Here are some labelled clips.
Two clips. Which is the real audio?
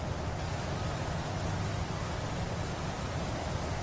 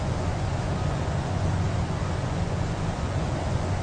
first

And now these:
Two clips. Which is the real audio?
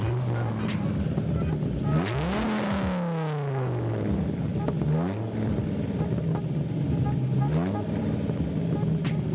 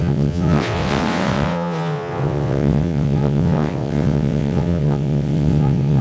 first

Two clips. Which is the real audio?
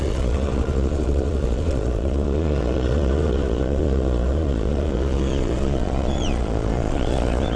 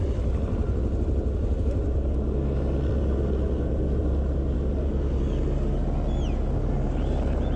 second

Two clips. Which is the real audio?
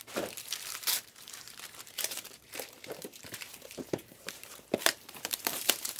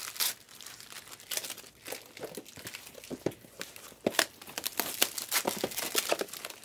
second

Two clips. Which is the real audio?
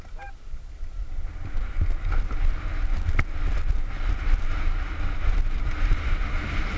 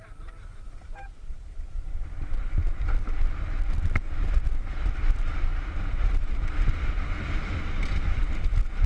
first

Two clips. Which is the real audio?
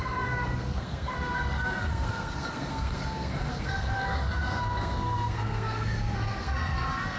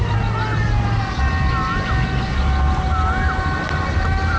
second